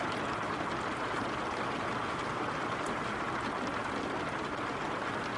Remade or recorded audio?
recorded